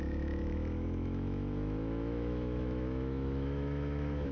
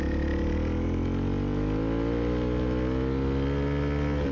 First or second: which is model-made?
first